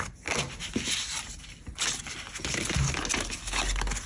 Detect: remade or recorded recorded